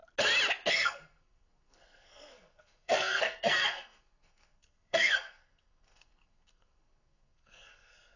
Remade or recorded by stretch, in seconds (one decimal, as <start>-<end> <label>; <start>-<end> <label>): 0.0-0.7 recorded; 0.7-8.2 remade